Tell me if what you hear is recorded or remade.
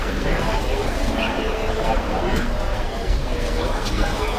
remade